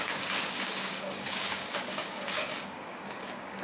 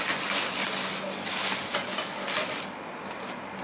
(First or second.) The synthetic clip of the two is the first